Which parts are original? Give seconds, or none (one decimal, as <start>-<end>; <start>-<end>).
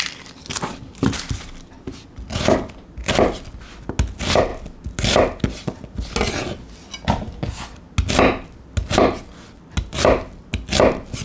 0.0-11.2